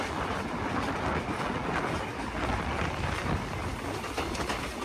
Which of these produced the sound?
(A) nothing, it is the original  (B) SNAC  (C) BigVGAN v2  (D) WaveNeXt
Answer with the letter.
A